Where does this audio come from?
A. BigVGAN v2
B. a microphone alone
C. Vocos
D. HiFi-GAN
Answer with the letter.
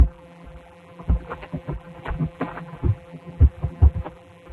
A